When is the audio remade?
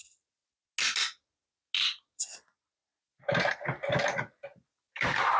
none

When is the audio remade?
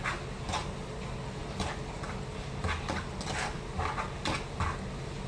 none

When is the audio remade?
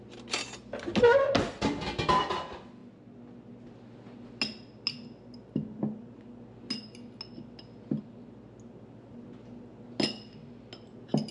none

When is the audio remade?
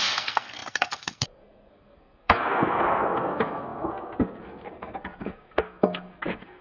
0.0-6.6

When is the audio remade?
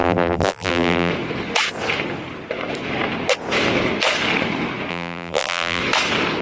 0.0-1.1; 4.9-5.8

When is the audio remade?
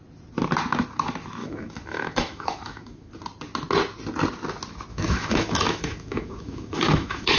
1.4-3.1; 4.9-7.4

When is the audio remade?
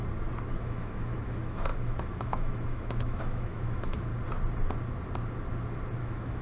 0.5-4.1; 6.0-6.4